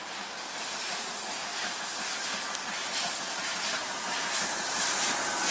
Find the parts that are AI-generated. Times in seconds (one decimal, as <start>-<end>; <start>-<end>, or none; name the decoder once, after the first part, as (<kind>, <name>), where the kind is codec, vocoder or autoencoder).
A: 2.8-5.5 (vocoder, BigVGAN v2)